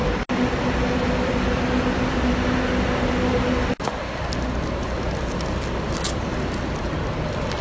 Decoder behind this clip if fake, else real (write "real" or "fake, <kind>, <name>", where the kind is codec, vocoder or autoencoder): real